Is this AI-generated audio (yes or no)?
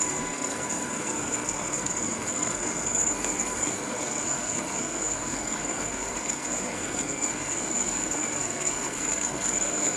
yes